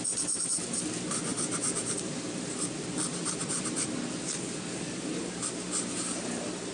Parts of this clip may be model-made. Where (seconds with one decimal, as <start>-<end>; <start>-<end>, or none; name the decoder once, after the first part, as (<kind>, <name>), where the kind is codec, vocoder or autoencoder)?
none